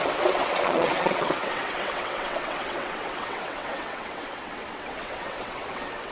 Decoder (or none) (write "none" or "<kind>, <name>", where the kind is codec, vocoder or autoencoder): vocoder, WaveNeXt